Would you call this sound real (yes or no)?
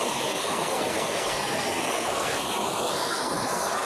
no